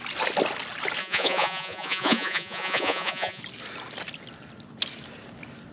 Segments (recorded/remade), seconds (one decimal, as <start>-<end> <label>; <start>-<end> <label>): 0.0-1.0 recorded; 1.0-3.4 remade; 3.4-5.7 recorded